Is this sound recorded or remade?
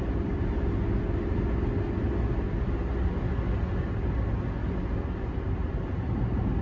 recorded